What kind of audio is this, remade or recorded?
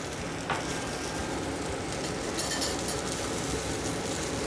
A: recorded